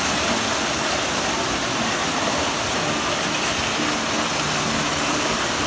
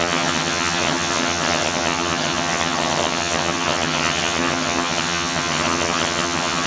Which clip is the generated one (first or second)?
second